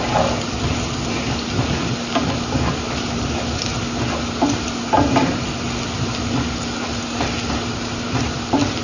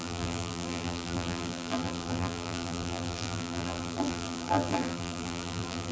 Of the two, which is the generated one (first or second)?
second